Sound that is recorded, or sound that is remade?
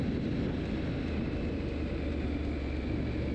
recorded